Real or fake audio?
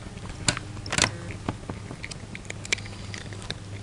real